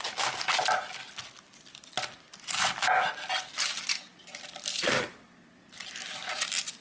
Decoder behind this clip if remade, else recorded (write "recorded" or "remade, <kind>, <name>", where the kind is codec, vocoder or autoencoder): recorded